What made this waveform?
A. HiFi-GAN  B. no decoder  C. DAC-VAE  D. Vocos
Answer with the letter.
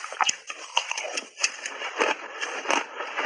B